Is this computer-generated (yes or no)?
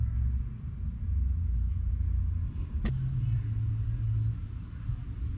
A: no